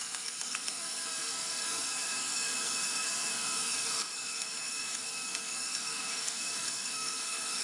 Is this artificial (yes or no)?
yes